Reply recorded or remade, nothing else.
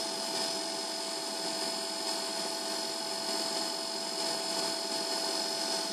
recorded